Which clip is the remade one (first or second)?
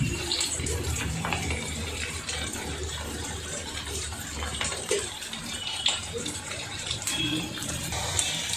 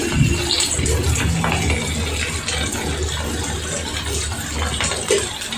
first